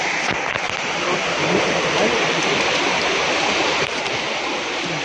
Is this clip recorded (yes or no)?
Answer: yes